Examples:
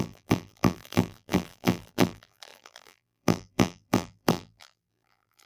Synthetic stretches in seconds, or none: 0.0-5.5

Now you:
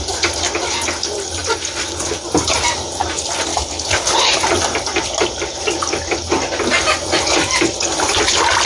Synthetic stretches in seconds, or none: 3.5-4.3

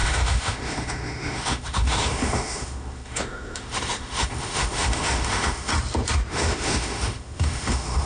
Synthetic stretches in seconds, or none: 0.0-5.7; 6.3-8.1

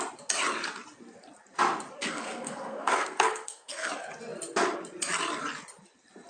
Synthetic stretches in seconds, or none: 2.0-3.9